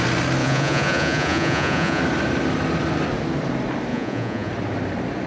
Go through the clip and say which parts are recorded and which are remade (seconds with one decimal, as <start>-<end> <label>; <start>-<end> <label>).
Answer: 0.0-0.4 recorded; 0.4-2.0 remade; 2.0-3.9 recorded; 3.9-4.5 remade; 4.5-5.3 recorded